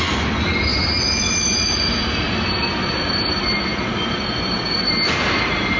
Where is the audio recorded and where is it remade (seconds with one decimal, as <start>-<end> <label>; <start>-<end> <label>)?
0.0-5.8 recorded